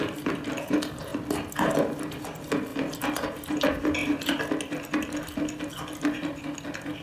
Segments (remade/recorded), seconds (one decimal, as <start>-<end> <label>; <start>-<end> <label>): 0.0-7.0 recorded